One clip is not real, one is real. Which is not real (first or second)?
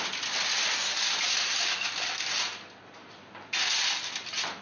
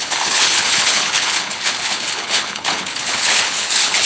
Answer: second